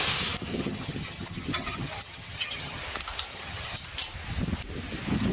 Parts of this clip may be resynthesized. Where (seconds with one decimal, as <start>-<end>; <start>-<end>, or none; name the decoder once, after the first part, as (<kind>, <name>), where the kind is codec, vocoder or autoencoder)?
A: 0.5-2.8 (vocoder, HiFi-GAN); 3.3-3.8